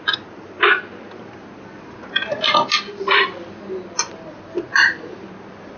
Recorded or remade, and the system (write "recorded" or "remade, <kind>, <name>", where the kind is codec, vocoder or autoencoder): recorded